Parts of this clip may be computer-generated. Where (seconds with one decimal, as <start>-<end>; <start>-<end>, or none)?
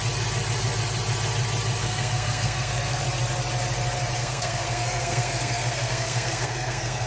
1.8-3.0; 4.2-7.1